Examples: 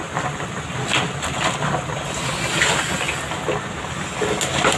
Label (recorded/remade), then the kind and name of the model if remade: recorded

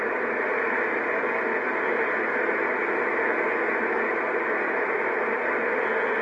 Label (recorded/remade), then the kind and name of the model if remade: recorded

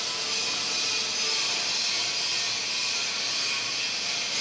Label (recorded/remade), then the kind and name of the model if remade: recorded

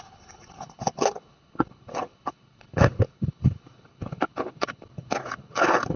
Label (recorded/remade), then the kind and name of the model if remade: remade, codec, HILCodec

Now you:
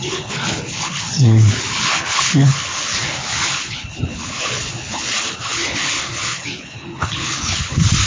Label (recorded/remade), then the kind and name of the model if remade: remade, codec, HILCodec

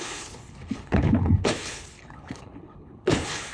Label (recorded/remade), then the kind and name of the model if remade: remade, codec, HILCodec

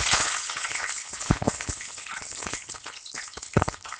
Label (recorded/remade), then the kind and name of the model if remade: remade, codec, HILCodec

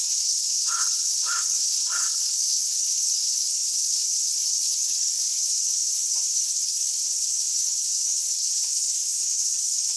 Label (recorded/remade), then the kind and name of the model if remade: remade, codec, HILCodec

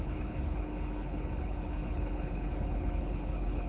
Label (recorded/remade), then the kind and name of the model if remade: remade, codec, HILCodec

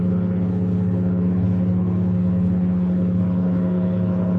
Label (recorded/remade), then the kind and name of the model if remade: remade, codec, HILCodec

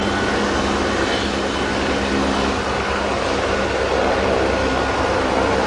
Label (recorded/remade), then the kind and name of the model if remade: recorded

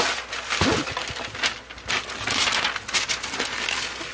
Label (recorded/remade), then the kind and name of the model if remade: recorded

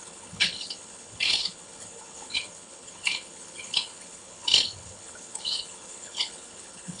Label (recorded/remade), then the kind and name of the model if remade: remade, codec, HILCodec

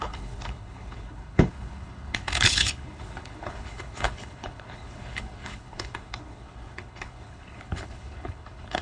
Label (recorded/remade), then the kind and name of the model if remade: remade, codec, HILCodec